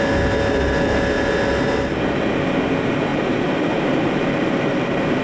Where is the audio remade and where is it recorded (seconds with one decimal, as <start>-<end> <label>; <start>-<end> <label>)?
0.0-3.1 recorded; 3.1-5.2 remade